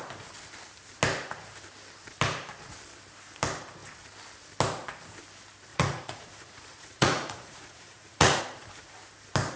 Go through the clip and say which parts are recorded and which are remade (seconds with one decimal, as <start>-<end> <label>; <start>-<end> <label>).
0.0-5.7 recorded; 5.7-8.4 remade; 8.4-9.6 recorded